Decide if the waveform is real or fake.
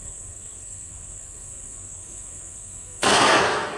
fake